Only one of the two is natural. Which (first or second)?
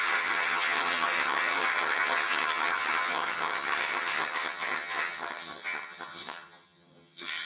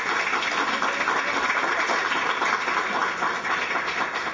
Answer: second